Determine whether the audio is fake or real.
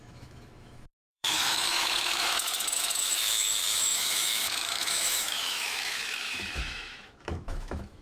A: fake